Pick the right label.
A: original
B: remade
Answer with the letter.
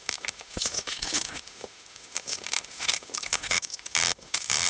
B